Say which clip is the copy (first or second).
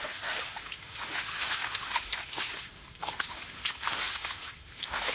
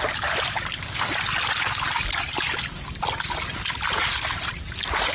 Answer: first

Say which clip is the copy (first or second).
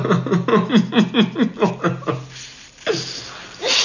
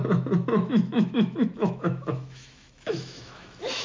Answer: second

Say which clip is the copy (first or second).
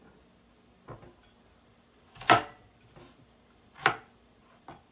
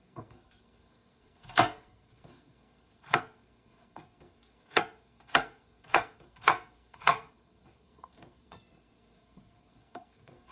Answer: second